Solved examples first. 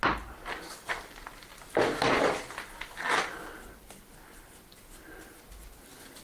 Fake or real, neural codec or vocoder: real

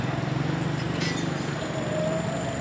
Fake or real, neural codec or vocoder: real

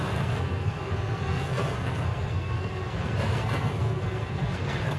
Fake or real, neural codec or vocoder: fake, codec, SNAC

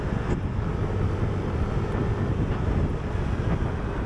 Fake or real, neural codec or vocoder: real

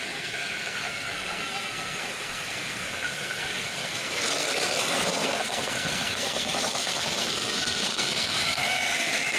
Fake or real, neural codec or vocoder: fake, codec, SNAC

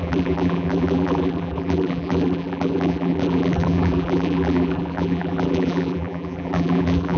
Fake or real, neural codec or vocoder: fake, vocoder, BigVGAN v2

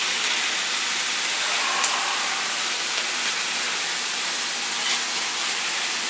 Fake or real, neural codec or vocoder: real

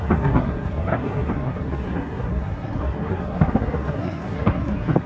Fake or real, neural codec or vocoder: fake, codec, SNAC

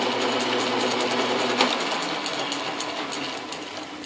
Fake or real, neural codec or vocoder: real